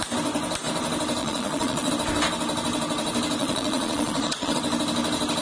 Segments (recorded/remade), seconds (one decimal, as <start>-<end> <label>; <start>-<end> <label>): 0.0-1.2 recorded; 1.2-1.9 remade; 1.9-3.4 recorded; 3.4-4.6 remade; 4.6-5.4 recorded